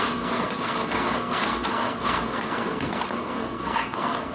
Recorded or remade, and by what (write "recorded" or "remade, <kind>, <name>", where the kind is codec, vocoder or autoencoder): remade, codec, SNAC